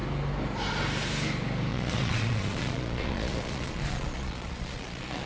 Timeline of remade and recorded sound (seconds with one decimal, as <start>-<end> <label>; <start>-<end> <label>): 0.0-1.7 recorded; 1.7-5.3 remade